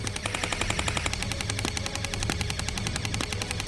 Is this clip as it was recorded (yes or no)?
yes